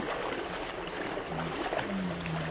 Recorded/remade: recorded